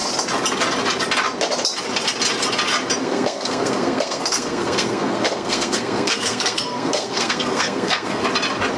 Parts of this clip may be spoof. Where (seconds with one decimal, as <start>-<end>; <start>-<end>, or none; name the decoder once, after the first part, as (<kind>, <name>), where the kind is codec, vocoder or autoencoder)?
3.0-8.2 (codec, SNAC)